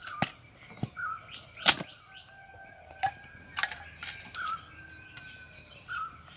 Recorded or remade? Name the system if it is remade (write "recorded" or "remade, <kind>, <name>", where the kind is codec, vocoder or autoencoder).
recorded